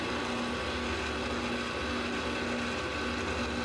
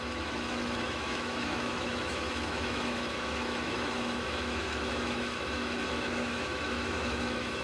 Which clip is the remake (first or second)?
second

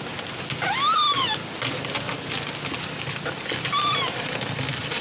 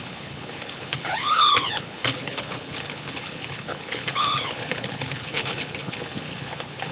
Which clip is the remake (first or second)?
second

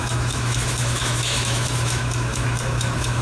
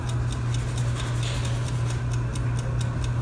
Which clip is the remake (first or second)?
first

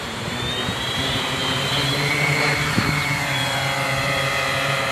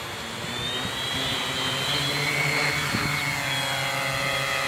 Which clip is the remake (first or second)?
first